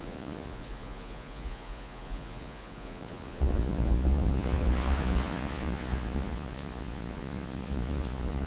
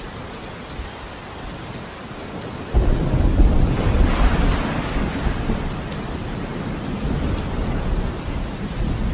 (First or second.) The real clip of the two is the second